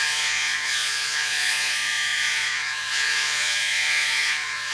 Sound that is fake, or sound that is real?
fake